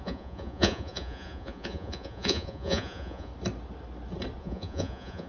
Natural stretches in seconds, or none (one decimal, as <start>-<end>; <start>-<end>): 3.3-4.4